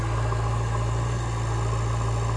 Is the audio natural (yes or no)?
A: yes